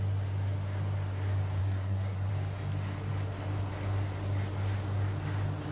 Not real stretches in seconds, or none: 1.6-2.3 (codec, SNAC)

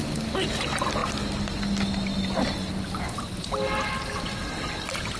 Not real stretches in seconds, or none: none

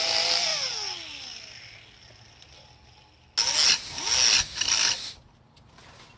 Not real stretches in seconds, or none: none